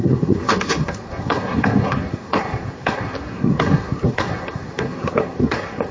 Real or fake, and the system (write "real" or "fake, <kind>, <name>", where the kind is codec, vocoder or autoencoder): fake, codec, SNAC